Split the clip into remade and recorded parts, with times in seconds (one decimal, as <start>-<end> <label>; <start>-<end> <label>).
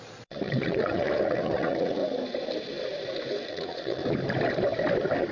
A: 0.0-2.0 remade; 2.0-3.5 recorded; 3.5-4.0 remade; 4.0-5.3 recorded